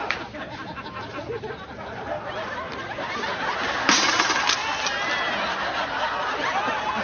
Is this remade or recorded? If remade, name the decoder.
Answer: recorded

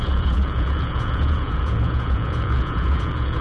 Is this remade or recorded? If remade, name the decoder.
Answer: remade, vocoder, Vocos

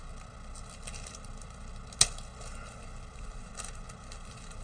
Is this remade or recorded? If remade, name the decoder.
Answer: recorded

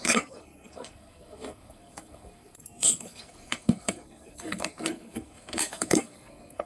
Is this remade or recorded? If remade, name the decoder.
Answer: remade, codec, SNAC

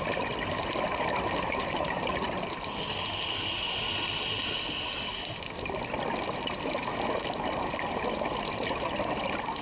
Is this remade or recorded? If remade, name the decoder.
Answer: recorded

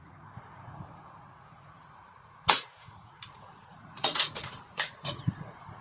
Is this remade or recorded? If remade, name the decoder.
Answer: remade, vocoder, Vocos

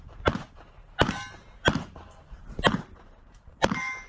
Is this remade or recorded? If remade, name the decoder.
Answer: remade, vocoder, BigVGAN v2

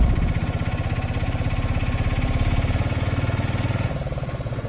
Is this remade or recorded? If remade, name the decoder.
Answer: recorded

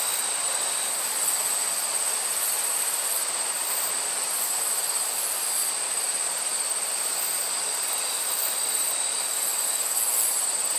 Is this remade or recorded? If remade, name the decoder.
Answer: recorded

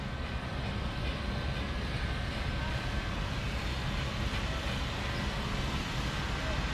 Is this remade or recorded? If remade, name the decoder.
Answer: recorded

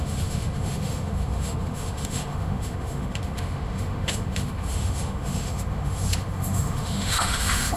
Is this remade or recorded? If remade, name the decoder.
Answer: remade, autoencoder, DAC-VAE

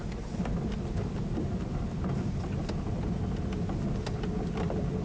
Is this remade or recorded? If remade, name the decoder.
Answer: recorded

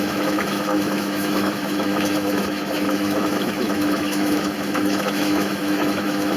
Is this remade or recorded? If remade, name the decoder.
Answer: remade, autoencoder, DAC-VAE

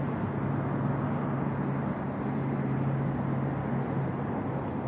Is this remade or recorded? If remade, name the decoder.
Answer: recorded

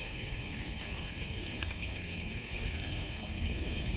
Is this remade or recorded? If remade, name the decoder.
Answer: remade, codec, SNAC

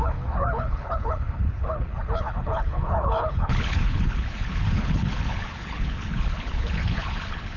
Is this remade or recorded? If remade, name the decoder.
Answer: remade, codec, HILCodec